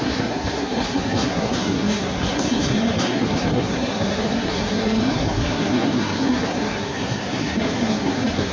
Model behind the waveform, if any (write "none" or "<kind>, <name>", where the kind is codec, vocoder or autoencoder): codec, SNAC